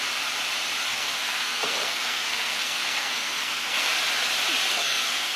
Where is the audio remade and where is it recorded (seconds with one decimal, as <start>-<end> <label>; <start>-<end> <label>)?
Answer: 0.0-0.9 recorded; 0.9-3.9 remade; 3.9-4.7 recorded; 4.7-5.4 remade